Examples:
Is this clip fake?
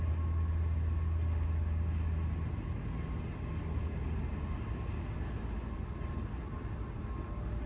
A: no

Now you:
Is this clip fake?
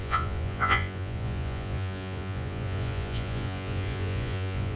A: yes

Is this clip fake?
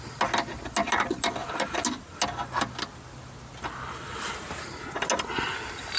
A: no